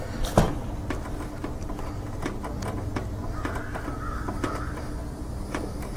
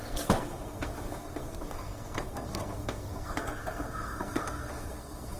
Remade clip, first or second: second